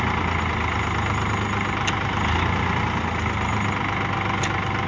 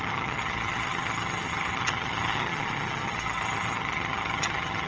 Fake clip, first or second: second